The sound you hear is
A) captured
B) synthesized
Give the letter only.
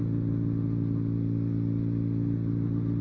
A